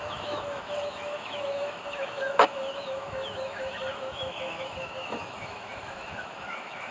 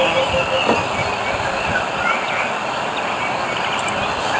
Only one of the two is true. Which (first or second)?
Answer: second